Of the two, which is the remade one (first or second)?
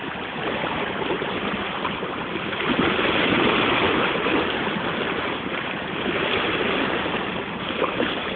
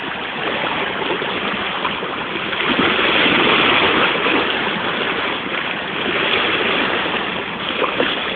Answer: first